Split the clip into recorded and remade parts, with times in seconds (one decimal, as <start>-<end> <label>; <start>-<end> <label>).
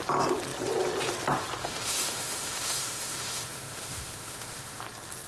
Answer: 0.0-1.6 recorded; 1.6-4.8 remade; 4.8-5.3 recorded